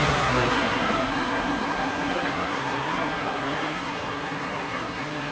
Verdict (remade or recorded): remade